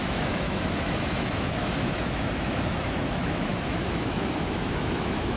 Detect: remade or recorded remade